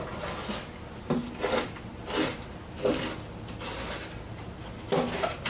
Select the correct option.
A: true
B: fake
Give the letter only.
A